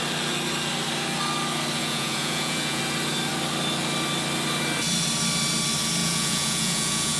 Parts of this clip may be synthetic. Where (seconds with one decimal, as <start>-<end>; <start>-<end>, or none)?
1.8-2.8; 6.0-7.2